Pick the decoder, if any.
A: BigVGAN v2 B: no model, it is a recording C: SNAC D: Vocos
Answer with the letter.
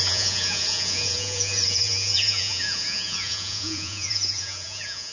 D